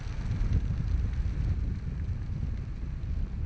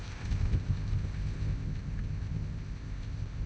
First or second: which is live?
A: first